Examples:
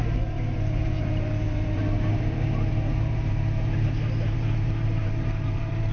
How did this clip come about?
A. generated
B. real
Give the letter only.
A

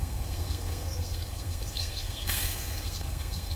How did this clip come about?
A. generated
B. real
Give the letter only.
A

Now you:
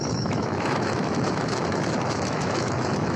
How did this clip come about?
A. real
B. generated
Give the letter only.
B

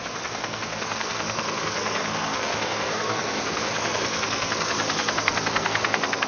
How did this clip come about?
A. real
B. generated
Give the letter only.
B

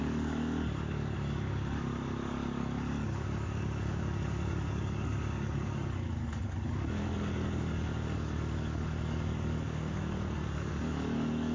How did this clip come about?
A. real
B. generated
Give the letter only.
B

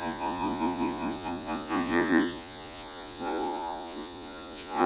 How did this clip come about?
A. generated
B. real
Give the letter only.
A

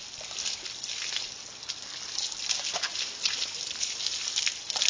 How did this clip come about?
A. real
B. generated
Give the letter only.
A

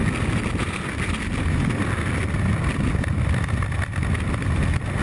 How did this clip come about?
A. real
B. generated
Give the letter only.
A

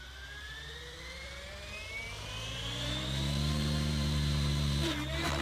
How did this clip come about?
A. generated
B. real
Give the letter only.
A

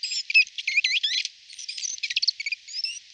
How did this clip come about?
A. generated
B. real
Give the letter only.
B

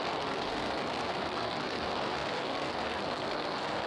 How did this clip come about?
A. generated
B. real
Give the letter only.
A